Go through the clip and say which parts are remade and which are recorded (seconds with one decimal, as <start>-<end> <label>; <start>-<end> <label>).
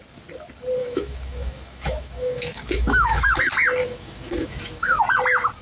0.0-0.8 recorded; 0.8-3.4 remade; 3.4-3.8 recorded; 3.8-5.0 remade; 5.0-5.6 recorded